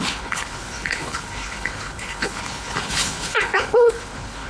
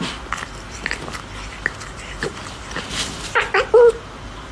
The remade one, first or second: first